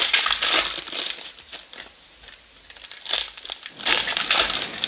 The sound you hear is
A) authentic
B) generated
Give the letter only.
A